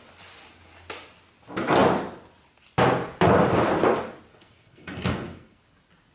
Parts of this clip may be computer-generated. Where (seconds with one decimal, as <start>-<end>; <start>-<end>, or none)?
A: 4.3-5.6